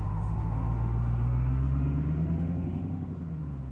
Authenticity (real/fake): fake